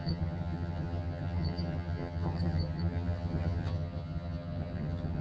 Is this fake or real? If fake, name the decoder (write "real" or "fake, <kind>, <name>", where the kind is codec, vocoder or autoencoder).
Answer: fake, vocoder, HiFi-GAN